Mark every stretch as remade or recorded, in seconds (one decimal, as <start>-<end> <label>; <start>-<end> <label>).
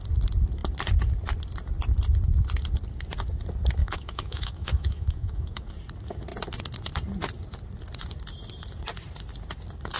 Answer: 0.0-3.8 recorded; 3.8-5.7 remade; 5.7-10.0 recorded